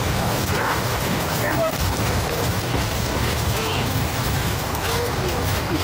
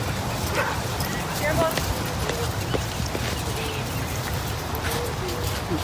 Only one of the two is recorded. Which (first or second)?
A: second